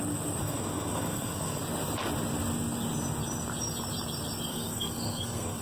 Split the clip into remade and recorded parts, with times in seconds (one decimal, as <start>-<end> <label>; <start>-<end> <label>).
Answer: 0.0-0.4 recorded; 0.4-1.6 remade; 1.6-4.5 recorded; 4.5-5.6 remade